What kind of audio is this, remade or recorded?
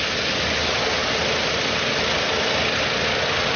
recorded